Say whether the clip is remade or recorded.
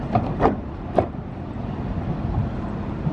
remade